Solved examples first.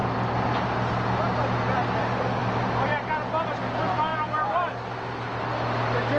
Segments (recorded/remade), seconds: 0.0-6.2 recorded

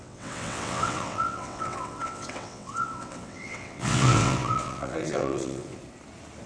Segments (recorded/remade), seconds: 0.0-5.8 remade; 5.8-6.5 recorded

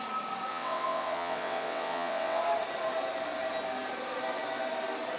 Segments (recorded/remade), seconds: 0.0-0.5 recorded; 0.5-2.4 remade; 2.4-5.2 recorded

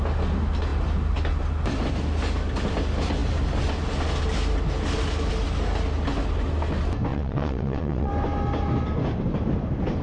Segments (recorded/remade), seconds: 0.0-7.1 recorded; 7.1-8.1 remade; 8.1-10.0 recorded